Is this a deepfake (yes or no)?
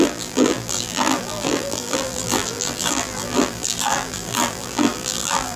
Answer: yes